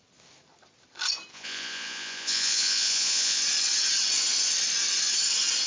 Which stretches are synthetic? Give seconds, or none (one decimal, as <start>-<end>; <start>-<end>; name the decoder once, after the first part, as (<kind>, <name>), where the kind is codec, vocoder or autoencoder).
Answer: 1.3-3.4 (vocoder, Vocos)